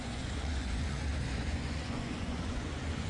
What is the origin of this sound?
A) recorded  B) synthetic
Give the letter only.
B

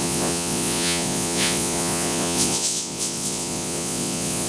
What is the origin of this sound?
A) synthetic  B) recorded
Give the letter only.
A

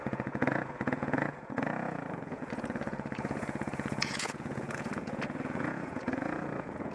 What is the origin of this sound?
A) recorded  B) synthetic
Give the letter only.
B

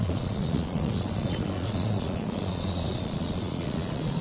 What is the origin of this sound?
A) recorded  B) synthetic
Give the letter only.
B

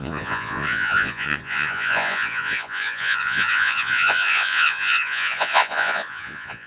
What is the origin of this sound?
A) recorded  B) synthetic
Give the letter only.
B